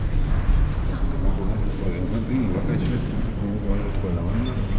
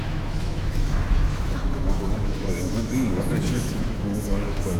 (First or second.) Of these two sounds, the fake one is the second